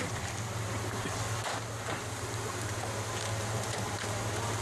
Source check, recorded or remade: recorded